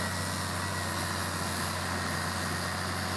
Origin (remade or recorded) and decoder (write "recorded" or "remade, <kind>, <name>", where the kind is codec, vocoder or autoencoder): recorded